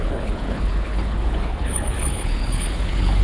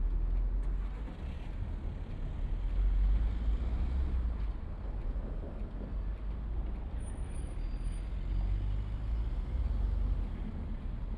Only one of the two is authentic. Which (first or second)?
second